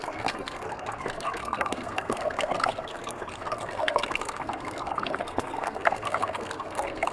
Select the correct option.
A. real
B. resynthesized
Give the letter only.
B